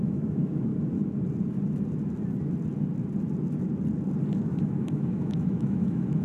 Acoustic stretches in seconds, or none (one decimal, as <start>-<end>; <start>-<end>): 0.7-4.4